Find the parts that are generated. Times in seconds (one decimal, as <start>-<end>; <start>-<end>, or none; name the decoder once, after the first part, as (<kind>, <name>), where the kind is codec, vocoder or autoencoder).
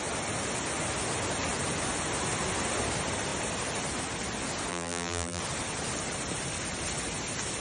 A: 4.7-5.4 (vocoder, BigVGAN v2)